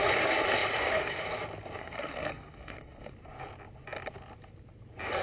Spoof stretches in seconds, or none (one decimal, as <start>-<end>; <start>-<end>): 1.8-3.1

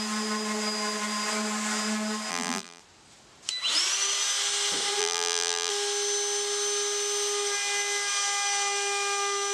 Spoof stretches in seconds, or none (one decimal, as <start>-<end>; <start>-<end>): 2.3-2.8; 5.0-5.7

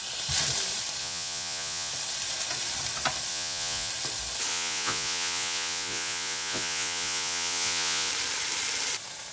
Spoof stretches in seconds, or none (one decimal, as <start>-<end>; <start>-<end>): 1.0-1.9; 3.3-3.9; 4.5-8.1

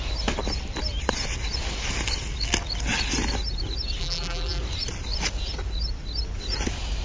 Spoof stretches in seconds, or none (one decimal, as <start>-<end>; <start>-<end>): 4.0-4.6

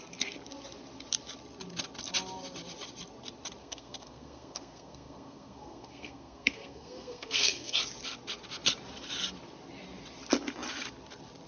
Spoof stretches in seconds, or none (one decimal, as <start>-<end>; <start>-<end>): 3.6-7.8

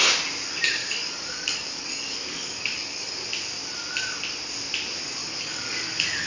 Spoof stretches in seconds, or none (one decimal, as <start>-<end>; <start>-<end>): 0.8-3.3; 5.2-6.3

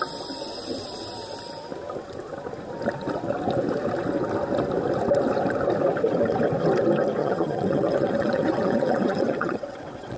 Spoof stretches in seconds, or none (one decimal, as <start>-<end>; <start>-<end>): 7.2-10.2